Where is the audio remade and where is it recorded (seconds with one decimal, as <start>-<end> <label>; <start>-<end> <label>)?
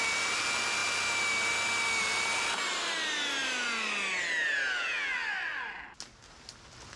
0.0-7.0 recorded